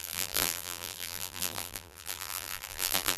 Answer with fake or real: fake